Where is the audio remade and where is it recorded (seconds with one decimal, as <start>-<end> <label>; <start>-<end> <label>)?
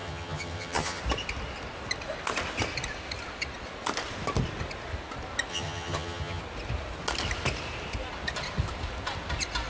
0.0-1.0 remade; 1.0-5.5 recorded; 5.5-6.4 remade; 6.4-9.7 recorded